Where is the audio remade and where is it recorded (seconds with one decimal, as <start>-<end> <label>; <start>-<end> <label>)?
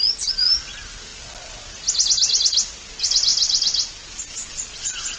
0.0-5.2 recorded